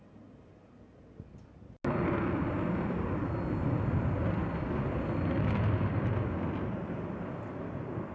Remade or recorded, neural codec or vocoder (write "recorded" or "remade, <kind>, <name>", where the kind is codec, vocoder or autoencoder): recorded